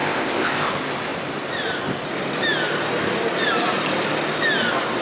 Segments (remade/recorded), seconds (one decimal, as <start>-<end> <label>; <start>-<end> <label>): 0.0-0.7 remade; 0.7-5.0 recorded